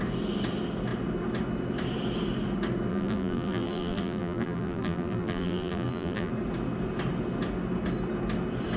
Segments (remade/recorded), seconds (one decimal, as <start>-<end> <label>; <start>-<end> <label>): 0.0-2.9 recorded; 2.9-6.3 remade; 6.3-8.8 recorded